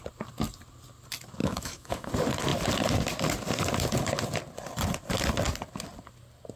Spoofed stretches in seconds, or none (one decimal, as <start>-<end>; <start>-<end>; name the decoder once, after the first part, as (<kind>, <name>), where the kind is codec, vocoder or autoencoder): 1.4-2.1 (autoencoder, DAC-VAE)